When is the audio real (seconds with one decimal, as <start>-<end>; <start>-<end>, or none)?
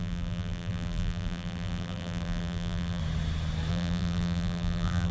3.0-3.7